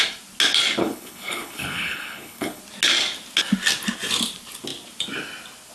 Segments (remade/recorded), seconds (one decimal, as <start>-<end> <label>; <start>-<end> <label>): 0.0-0.8 recorded; 0.8-2.6 remade; 2.6-5.7 recorded